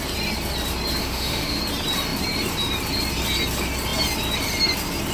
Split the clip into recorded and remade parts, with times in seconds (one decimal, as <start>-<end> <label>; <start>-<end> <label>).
0.0-1.0 recorded; 1.0-1.6 remade; 1.6-5.1 recorded